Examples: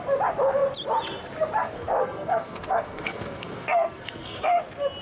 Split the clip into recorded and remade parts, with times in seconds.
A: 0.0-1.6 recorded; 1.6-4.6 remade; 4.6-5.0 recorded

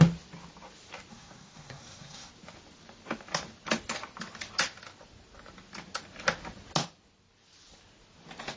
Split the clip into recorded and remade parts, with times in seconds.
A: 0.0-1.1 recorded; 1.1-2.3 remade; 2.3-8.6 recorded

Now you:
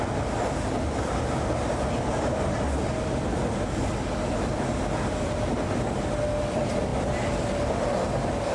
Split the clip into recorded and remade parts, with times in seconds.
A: 0.0-8.5 recorded